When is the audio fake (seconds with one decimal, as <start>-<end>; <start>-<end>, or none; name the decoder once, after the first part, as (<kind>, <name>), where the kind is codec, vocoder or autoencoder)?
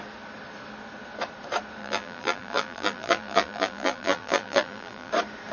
1.8-5.1 (vocoder, BigVGAN v2)